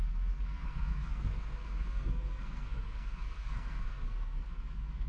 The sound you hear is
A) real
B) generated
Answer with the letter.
B